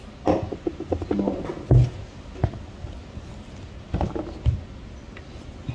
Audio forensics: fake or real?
real